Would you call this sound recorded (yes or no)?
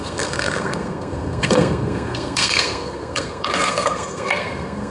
no